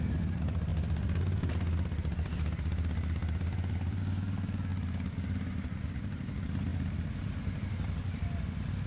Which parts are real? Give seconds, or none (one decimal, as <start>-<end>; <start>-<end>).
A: 0.0-0.7; 4.0-4.7; 5.9-6.7; 7.4-8.9